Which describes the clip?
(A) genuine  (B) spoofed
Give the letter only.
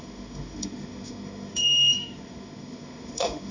B